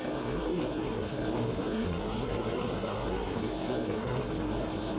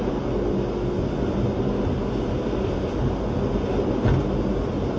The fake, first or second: first